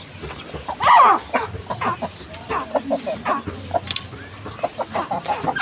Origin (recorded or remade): recorded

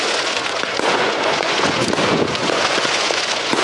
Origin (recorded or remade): remade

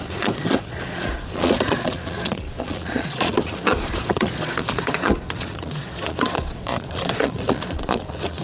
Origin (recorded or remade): remade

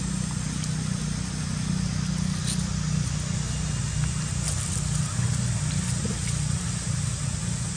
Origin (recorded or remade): recorded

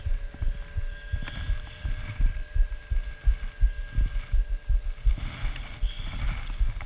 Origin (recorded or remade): recorded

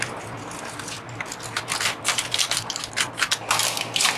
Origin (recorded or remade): recorded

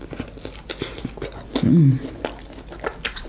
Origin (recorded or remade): recorded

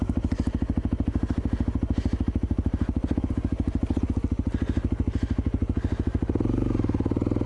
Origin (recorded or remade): recorded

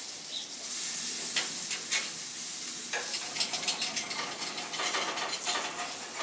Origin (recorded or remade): recorded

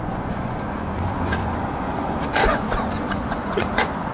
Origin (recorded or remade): remade